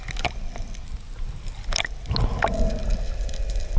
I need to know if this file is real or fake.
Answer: real